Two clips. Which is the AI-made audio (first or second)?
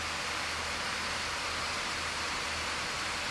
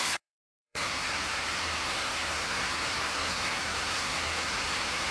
second